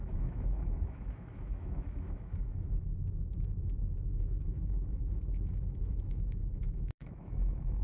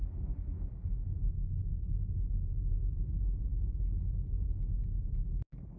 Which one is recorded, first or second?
second